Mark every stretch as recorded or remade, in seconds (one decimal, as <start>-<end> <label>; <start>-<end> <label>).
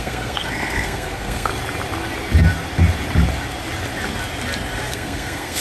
0.0-1.5 remade; 1.5-4.9 recorded; 4.9-5.6 remade